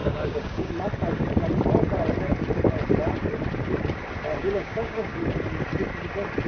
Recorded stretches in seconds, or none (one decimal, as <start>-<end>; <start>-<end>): 0.7-4.4; 5.2-6.5